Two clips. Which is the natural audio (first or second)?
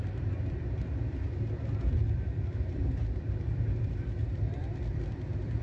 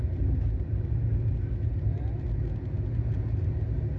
second